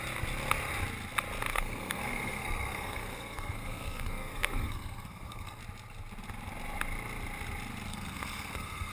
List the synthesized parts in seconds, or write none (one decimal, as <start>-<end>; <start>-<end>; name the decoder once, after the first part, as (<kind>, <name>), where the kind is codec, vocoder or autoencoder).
1.5-5.6 (codec, SNAC); 7.9-8.9